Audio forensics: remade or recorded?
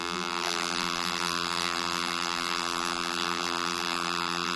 remade